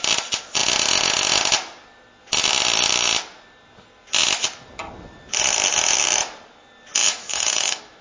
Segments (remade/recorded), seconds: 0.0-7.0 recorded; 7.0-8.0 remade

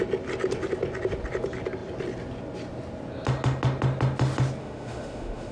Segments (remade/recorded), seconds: 0.0-4.6 recorded; 4.6-5.5 remade

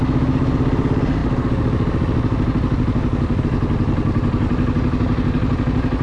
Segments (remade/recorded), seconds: 0.0-6.0 recorded

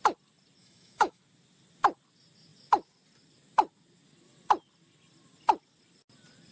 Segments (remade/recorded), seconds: 0.0-0.6 recorded; 0.6-1.2 remade; 1.2-6.5 recorded

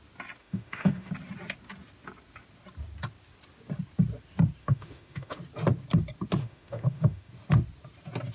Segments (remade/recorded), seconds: 0.0-0.4 recorded; 0.4-1.1 remade; 1.1-4.6 recorded; 4.6-5.4 remade; 5.4-6.4 recorded; 6.4-7.3 remade; 7.3-8.3 recorded

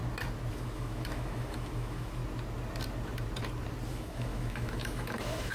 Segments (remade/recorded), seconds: 0.0-0.5 recorded; 0.5-2.2 remade; 2.2-3.9 recorded; 3.9-5.5 remade

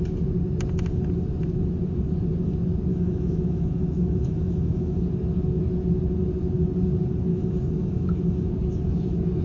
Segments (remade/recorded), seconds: 0.0-2.9 recorded; 2.9-5.0 remade; 5.0-7.3 recorded; 7.3-8.5 remade; 8.5-9.4 recorded

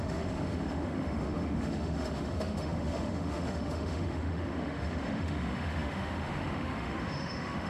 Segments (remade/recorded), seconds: 0.0-7.7 remade